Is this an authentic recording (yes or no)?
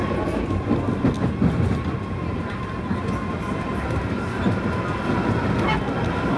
yes